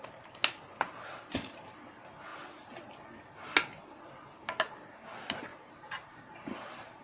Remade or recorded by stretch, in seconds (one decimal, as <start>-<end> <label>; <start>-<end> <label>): 0.0-5.5 recorded; 5.5-7.0 remade